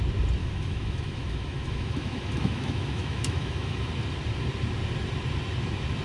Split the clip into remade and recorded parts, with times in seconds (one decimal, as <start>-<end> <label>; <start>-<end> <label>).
0.0-0.4 recorded; 0.4-3.9 remade; 3.9-6.0 recorded